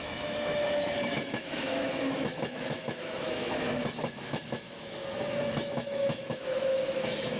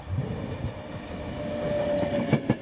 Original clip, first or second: second